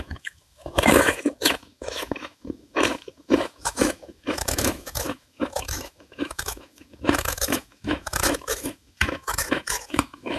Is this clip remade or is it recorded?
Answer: remade